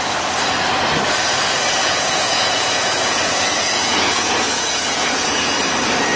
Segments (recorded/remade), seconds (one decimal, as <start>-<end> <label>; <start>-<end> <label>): 0.0-1.8 recorded; 1.8-5.5 remade; 5.5-6.2 recorded